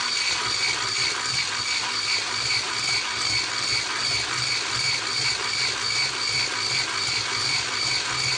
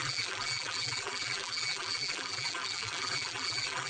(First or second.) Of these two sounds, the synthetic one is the second